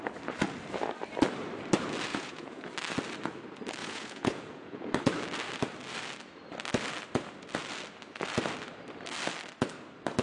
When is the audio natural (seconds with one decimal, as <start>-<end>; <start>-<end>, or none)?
0.0-2.1; 2.7-3.8; 4.9-10.2